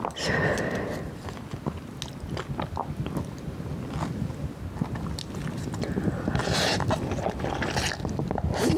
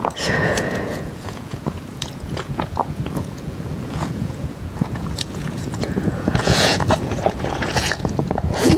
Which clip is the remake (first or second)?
second